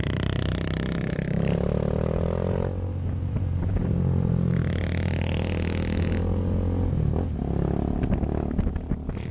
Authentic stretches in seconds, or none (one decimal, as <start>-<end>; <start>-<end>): 4.6-8.7